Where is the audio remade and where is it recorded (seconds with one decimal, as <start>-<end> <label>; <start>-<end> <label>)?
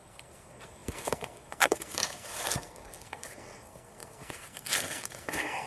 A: 0.0-5.7 remade